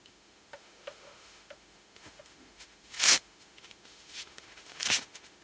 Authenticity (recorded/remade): remade